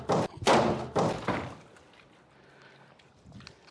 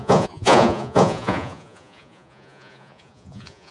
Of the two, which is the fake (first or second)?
second